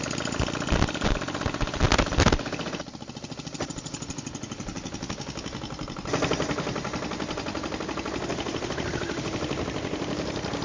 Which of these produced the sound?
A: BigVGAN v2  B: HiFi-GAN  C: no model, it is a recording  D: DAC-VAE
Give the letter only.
C